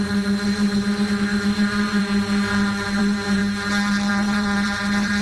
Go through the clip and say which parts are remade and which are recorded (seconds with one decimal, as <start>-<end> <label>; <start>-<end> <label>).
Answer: 0.0-2.0 remade; 2.0-3.0 recorded; 3.0-3.4 remade; 3.4-4.1 recorded; 4.1-5.2 remade